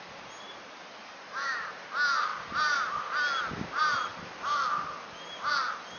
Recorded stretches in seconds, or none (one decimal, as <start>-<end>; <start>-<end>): 0.0-1.1; 1.9-2.3; 2.8-6.0